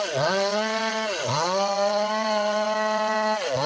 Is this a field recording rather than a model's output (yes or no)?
no